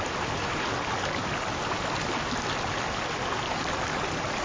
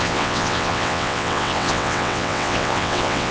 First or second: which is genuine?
first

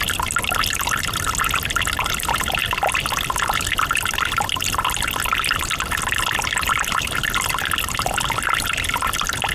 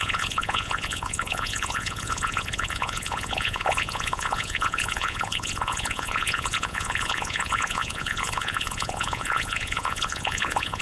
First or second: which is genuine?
first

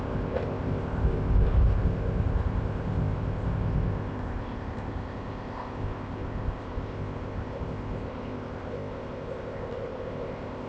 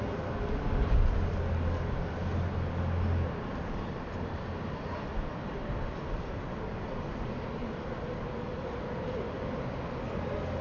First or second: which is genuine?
second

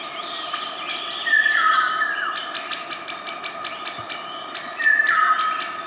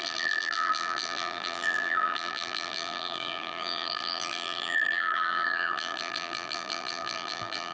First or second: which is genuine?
first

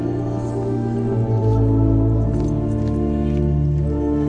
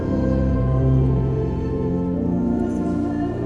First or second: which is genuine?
first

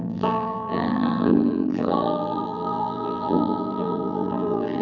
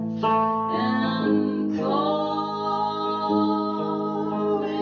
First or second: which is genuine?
second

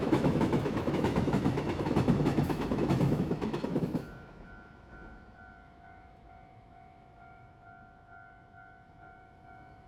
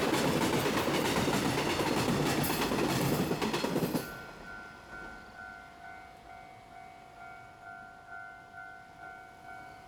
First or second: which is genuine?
second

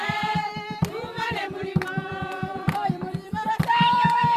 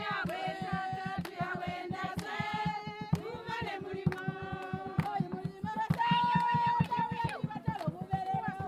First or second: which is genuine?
second